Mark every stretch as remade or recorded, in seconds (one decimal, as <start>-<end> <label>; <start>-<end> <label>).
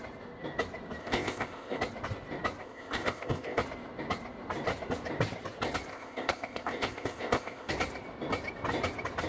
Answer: 0.0-1.0 recorded; 1.0-1.8 remade; 1.8-2.6 recorded; 2.6-3.6 remade; 3.6-5.9 recorded; 5.9-7.7 remade; 7.7-9.3 recorded